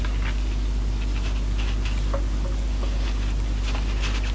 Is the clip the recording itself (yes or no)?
yes